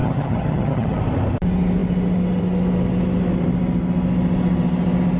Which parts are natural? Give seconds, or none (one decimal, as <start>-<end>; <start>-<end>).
1.0-5.2